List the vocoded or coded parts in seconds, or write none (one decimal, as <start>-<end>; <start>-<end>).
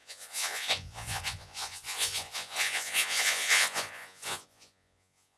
0.0-5.4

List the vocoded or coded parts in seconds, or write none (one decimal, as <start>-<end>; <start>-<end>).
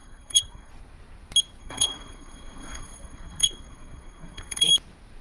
0.0-0.7; 1.6-4.7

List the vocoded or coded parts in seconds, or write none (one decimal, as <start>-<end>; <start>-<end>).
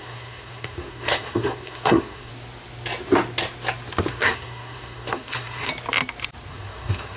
0.0-2.3; 4.1-5.7; 6.5-7.2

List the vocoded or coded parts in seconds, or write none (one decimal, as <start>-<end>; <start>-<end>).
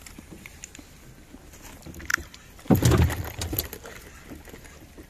none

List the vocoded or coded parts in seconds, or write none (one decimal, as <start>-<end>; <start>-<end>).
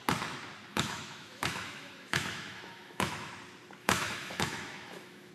0.7-3.3; 3.8-5.3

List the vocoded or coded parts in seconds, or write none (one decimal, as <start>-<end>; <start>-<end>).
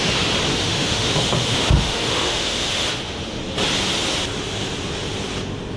0.5-3.4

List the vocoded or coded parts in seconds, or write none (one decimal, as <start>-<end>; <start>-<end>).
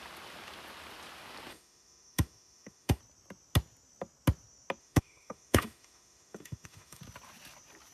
1.5-3.0; 4.8-7.0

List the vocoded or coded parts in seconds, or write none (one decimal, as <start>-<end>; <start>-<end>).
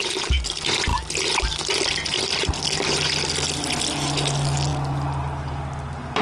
none